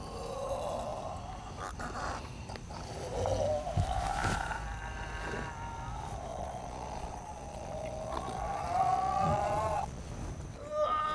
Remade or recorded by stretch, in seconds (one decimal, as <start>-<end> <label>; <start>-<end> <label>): 0.0-6.3 recorded; 6.3-10.1 remade; 10.1-11.1 recorded